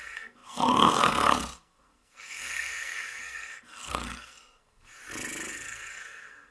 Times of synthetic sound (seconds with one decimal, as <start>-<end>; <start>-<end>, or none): 0.0-5.0; 5.5-6.5